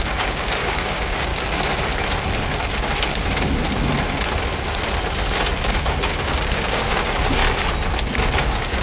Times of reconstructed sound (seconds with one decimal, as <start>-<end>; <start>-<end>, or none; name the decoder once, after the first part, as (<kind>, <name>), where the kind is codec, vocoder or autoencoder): 0.0-1.3 (codec, DAC); 5.6-7.4; 8.4-8.8